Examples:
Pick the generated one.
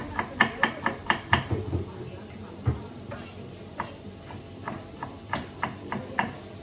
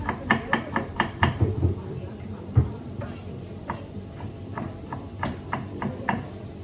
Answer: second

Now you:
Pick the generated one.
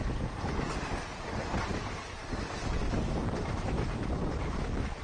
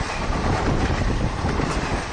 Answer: second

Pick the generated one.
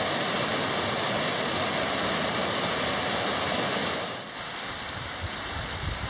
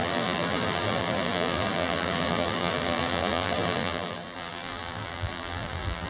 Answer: second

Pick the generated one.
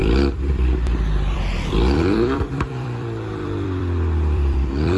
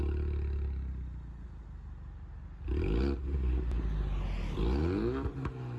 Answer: first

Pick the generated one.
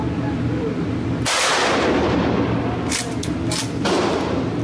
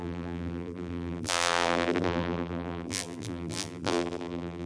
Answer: second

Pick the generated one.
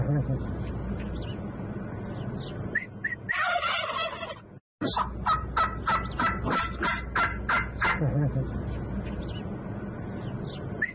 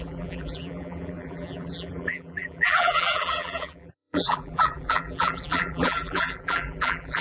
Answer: second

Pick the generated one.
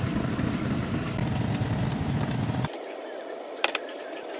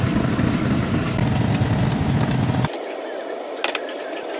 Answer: first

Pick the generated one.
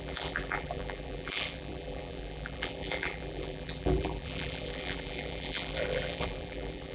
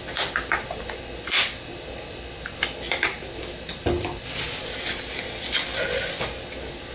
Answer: first